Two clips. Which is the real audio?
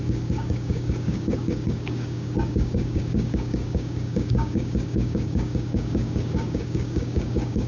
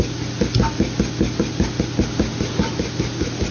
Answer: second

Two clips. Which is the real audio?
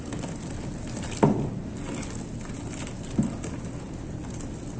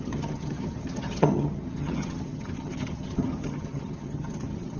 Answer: first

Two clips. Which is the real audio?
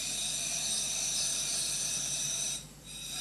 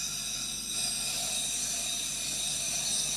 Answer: second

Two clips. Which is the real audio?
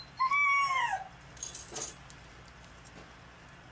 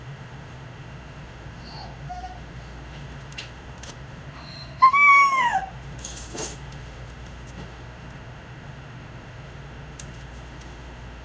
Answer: first